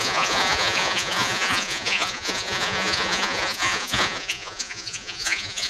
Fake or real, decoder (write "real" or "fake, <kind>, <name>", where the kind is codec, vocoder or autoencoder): fake, vocoder, Vocos